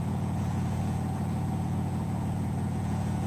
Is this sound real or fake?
fake